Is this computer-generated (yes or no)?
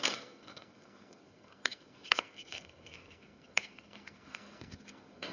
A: yes